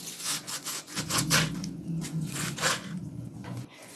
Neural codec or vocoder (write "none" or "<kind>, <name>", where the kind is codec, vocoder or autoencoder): vocoder, Vocos